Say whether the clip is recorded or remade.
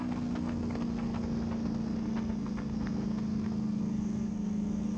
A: remade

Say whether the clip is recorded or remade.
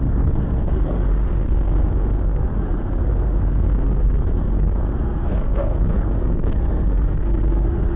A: remade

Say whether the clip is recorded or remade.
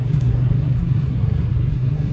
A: remade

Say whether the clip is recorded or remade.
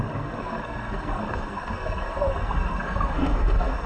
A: remade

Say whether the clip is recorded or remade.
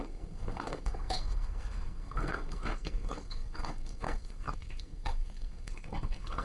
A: remade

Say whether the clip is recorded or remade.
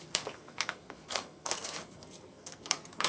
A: remade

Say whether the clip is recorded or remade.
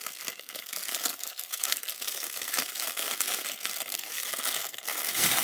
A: remade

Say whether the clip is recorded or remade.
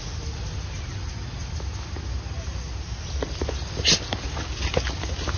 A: recorded